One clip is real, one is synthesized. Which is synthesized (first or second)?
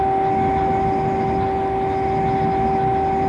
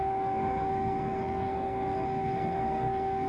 second